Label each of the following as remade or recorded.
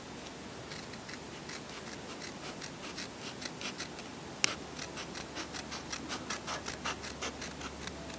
recorded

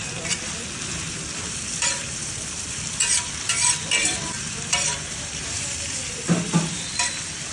remade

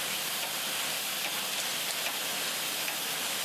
remade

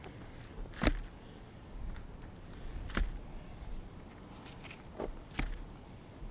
recorded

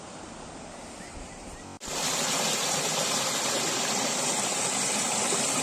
recorded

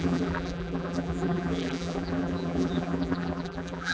remade